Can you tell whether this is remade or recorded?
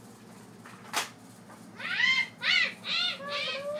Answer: recorded